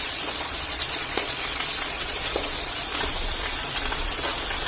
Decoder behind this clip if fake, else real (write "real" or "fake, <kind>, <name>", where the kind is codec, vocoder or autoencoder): fake, vocoder, Vocos